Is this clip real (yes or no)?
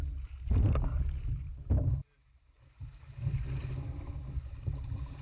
yes